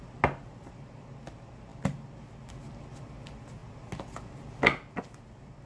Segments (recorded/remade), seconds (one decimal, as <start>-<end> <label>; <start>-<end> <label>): 0.0-5.7 recorded